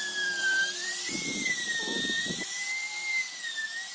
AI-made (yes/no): yes